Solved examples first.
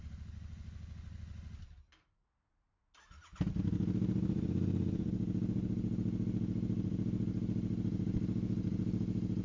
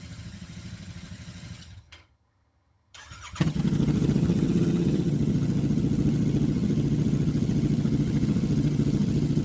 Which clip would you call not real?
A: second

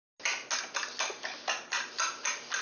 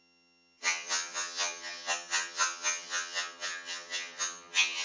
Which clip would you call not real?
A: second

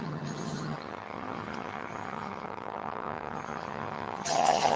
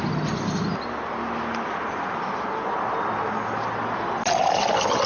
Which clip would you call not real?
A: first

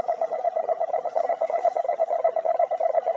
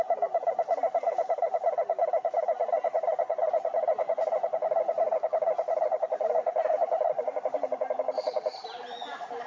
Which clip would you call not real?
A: first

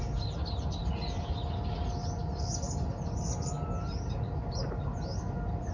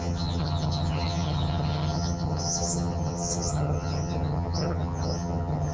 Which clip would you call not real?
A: second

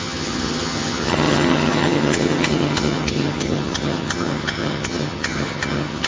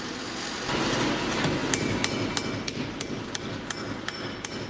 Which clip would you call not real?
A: first